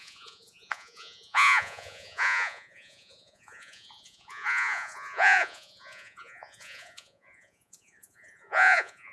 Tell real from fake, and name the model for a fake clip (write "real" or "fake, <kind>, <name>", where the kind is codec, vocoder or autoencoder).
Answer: fake, vocoder, Vocos